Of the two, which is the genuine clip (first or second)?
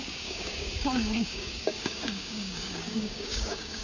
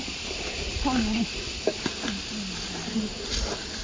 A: second